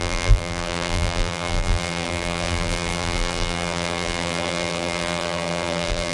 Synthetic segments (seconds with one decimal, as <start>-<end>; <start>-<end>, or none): 0.0-6.1